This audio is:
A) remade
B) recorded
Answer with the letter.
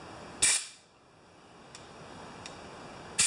B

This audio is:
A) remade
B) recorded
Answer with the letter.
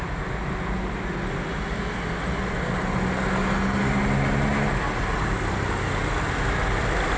B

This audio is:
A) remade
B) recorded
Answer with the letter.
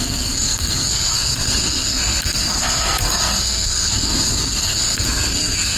A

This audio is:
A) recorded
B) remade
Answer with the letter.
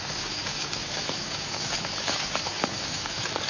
B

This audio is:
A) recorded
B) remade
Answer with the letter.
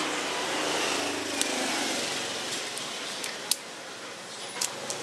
A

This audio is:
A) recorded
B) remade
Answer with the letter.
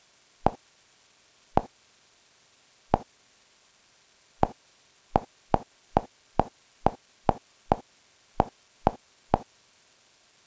A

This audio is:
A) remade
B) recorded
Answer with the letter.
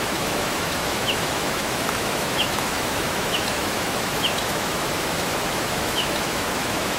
A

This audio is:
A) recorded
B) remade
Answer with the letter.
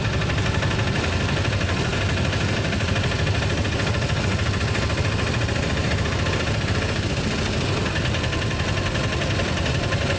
B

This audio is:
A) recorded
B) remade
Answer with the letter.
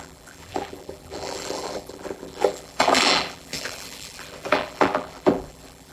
B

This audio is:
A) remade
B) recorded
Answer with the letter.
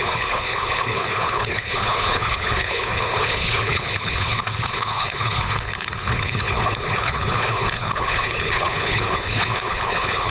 A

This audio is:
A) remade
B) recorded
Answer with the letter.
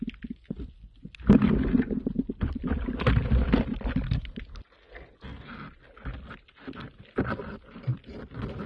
B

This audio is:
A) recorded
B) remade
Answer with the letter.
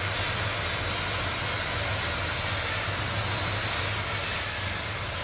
A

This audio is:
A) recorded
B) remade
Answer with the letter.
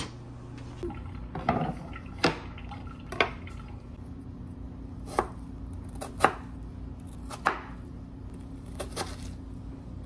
A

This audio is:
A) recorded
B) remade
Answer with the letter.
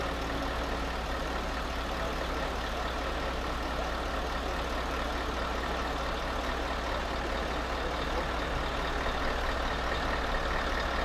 A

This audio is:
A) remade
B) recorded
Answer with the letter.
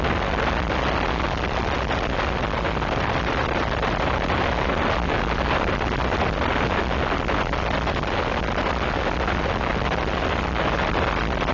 B